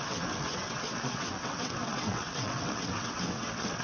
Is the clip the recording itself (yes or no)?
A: no